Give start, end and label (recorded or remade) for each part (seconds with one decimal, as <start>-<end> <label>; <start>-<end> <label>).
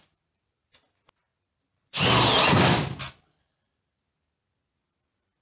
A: 0.0-5.4 recorded